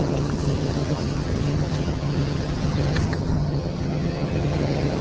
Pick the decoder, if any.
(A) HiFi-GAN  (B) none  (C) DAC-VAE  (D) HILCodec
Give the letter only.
A